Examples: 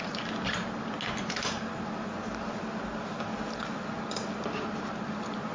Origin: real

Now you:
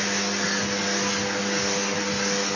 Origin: real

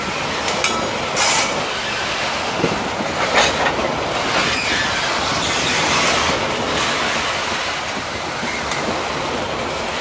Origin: real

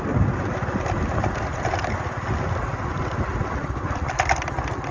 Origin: real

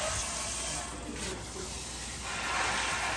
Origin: real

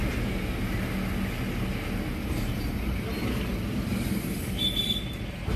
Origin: real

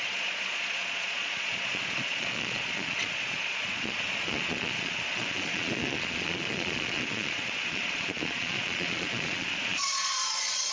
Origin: fake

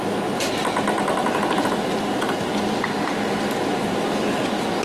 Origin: real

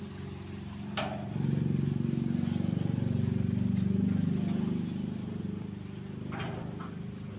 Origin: real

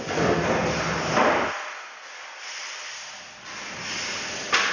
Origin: real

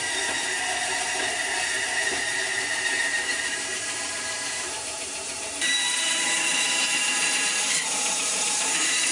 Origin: fake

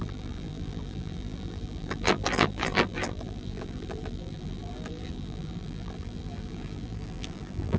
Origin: fake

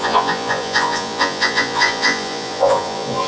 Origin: fake